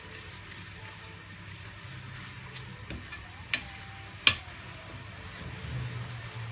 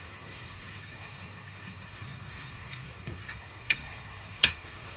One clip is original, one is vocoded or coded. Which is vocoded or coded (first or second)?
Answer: second